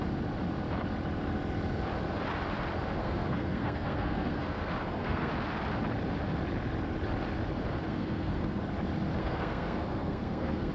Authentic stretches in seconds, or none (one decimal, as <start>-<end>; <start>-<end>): 0.0-3.0; 5.3-7.9; 8.6-9.2

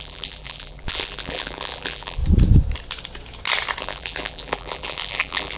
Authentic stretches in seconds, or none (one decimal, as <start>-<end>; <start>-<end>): 2.2-3.8

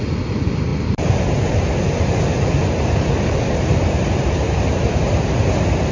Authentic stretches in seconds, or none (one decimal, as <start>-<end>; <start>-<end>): 0.0-0.7; 4.2-5.9

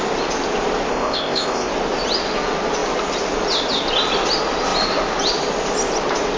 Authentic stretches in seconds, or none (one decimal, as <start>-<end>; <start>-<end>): 0.0-0.9; 1.7-6.4